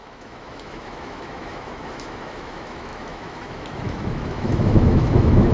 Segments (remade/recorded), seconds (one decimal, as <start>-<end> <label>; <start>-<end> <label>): 0.0-5.5 remade